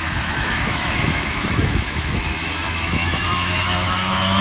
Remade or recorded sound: remade